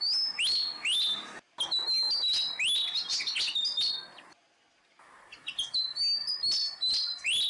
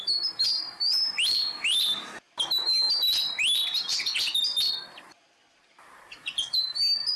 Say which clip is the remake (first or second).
second